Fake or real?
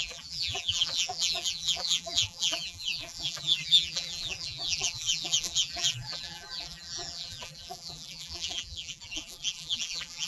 fake